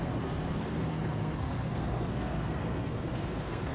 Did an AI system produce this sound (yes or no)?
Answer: yes